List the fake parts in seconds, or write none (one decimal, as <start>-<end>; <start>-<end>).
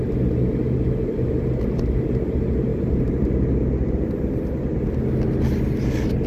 2.7-3.3